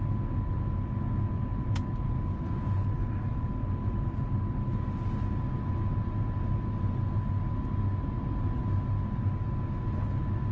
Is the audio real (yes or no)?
yes